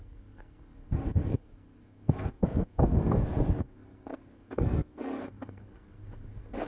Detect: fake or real fake